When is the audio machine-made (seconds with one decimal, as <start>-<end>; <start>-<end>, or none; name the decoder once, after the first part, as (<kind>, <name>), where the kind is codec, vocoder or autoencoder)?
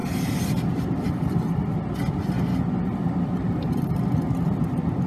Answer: none